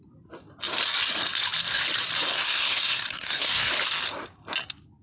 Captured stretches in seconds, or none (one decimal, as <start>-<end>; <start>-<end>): 0.0-2.4; 3.7-5.0